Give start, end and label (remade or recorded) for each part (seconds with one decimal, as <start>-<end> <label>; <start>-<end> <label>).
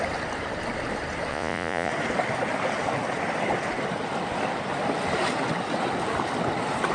0.0-1.3 recorded; 1.3-1.9 remade; 1.9-6.9 recorded